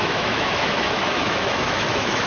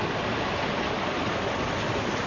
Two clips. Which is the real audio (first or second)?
second